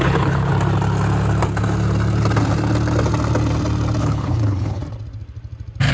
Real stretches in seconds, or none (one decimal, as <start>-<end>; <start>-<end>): 0.5-4.0; 4.8-5.9